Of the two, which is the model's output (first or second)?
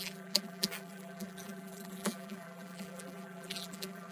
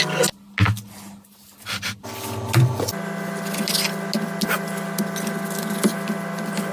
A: first